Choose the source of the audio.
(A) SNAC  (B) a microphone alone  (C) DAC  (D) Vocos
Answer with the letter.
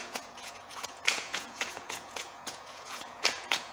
D